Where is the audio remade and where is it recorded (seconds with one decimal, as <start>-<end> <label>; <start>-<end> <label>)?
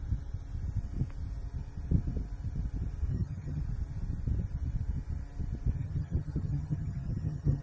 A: 0.0-3.1 recorded; 3.1-3.6 remade; 3.6-5.8 recorded; 5.8-7.6 remade